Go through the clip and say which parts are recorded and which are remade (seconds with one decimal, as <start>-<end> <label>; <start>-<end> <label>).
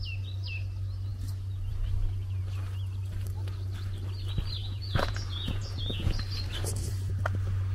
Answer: 0.0-4.6 recorded; 4.6-6.2 remade; 6.2-7.7 recorded